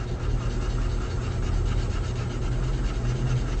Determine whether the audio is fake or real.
real